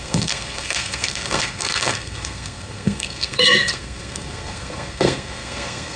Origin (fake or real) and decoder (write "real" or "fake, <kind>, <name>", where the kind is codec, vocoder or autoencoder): fake, codec, SNAC